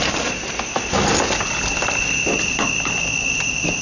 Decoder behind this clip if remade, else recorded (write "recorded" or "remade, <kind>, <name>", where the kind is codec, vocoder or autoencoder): recorded